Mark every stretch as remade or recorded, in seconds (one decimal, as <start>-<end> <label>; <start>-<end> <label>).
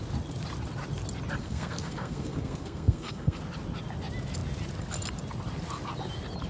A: 0.0-1.4 recorded; 1.4-3.4 remade; 3.4-6.5 recorded